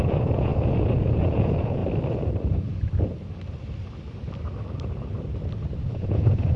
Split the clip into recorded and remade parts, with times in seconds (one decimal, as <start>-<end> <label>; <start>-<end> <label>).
0.0-1.8 remade; 1.8-5.8 recorded; 5.8-6.6 remade